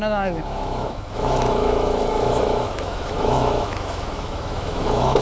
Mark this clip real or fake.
fake